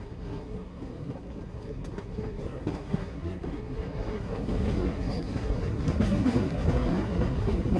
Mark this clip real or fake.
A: fake